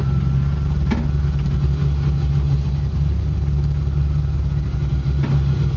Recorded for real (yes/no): yes